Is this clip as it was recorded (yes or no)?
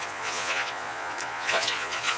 no